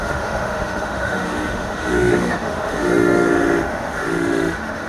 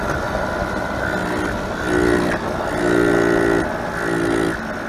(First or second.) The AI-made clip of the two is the first